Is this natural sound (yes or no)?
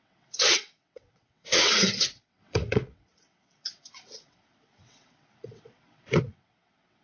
no